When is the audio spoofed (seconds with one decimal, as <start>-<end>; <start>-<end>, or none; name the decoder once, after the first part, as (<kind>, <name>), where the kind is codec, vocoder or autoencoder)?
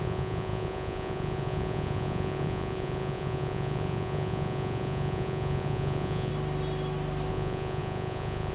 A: 0.0-6.3 (vocoder, Vocos); 7.3-8.5